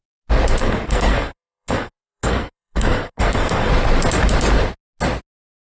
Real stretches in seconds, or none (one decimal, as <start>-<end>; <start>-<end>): 0.0-0.6; 3.7-5.7

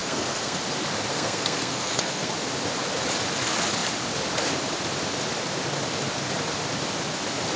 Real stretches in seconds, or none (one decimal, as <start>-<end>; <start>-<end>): 0.6-1.1; 2.3-7.6

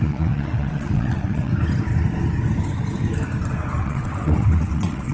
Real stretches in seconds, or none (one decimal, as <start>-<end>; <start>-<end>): 1.5-3.8

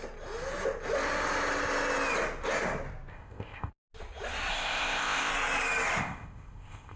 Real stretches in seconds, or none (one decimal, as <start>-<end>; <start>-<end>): 0.0-3.1; 3.7-4.5; 5.3-6.0

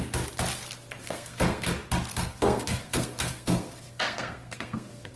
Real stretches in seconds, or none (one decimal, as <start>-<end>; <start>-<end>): 0.0-1.0; 1.7-2.1